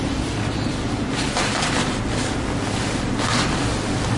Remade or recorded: remade